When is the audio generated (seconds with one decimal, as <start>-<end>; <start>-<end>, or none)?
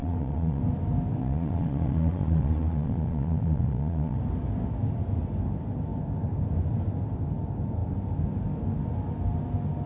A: 0.0-0.6; 1.2-4.2